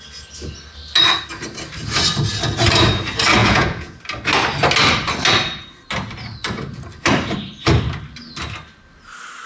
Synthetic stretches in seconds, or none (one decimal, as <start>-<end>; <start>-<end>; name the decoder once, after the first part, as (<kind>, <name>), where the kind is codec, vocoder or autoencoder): 3.4-4.0 (vocoder, Vocos)